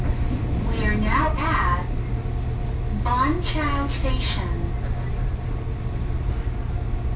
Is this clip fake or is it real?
real